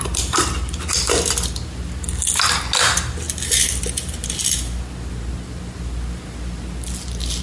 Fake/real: real